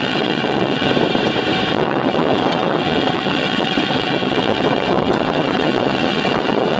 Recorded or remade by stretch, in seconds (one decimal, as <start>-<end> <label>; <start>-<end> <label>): 0.0-0.9 remade; 0.9-1.7 recorded; 1.7-6.8 remade